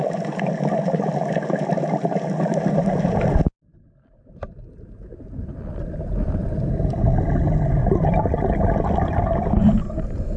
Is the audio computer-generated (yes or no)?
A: no